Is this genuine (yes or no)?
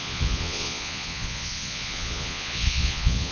no